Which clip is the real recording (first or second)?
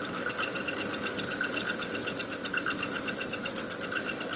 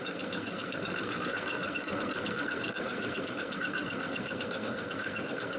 first